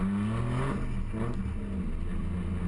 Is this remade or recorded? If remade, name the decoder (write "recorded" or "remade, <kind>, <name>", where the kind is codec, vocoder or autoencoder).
recorded